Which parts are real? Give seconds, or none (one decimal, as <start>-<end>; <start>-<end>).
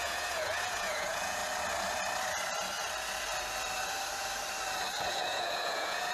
1.4-5.1